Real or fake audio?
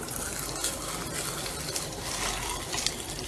real